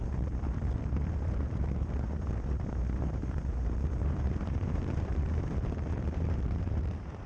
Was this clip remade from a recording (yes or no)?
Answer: yes